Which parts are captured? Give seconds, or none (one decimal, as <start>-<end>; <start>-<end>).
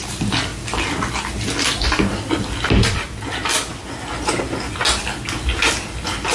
0.0-6.3